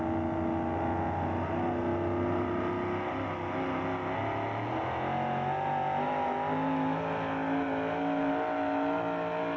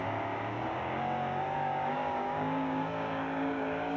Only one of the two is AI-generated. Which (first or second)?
second